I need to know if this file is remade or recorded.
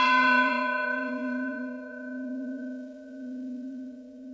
remade